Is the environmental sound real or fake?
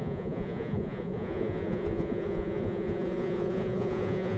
fake